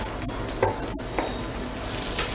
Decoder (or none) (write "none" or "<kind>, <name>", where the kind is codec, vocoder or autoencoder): none